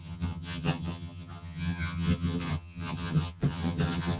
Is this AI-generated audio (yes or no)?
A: yes